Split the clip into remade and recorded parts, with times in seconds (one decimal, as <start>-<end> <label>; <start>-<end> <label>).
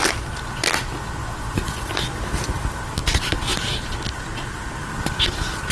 0.0-1.2 recorded; 1.2-1.8 remade; 1.8-5.7 recorded